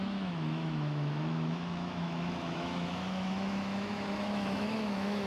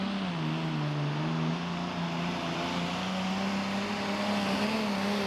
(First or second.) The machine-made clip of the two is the first